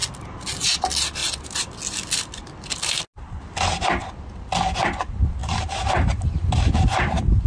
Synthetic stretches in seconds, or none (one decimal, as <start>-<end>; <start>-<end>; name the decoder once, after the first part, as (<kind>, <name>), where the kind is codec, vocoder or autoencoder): 5.4-7.5 (vocoder, BigVGAN v2)